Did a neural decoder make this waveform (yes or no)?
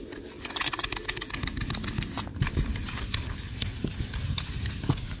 no